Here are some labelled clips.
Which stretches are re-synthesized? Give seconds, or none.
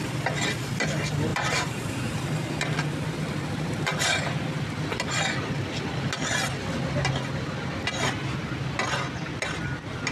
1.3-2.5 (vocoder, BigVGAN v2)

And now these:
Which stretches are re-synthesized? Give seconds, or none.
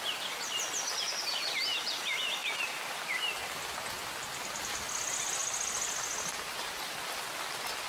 none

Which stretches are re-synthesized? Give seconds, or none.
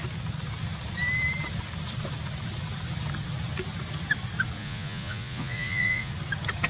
4.6-6.1 (vocoder, Vocos)